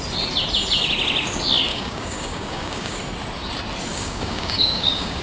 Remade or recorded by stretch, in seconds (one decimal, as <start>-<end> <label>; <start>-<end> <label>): 0.0-1.7 recorded; 1.7-3.0 remade; 3.0-3.9 recorded; 3.9-5.2 remade